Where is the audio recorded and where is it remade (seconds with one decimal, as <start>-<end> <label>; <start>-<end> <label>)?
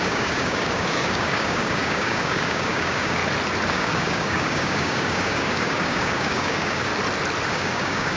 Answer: 0.0-3.2 remade; 3.2-3.7 recorded; 3.7-6.9 remade; 6.9-7.5 recorded; 7.5-8.2 remade